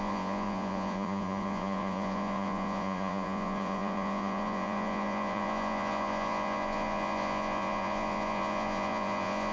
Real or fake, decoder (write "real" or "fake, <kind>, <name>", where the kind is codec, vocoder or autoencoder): fake, vocoder, Vocos